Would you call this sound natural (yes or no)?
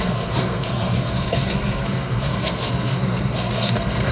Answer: no